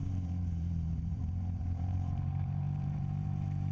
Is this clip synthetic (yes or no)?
yes